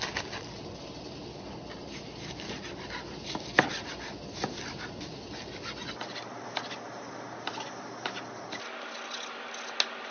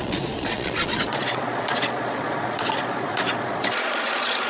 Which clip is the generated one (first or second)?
second